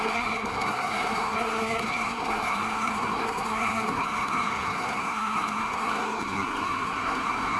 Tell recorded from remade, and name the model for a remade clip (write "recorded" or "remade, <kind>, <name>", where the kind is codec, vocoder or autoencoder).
remade, codec, SNAC